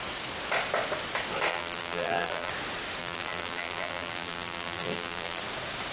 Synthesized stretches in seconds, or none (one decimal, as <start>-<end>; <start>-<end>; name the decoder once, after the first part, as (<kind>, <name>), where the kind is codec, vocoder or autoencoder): 1.5-2.5 (vocoder, BigVGAN v2); 3.0-5.4